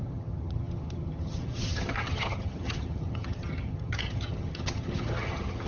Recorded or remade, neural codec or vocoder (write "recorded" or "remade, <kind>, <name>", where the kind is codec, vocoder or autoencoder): remade, vocoder, HiFi-GAN